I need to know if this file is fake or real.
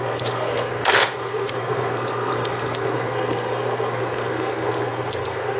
fake